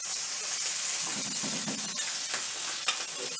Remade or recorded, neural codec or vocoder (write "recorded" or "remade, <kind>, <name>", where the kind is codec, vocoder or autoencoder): recorded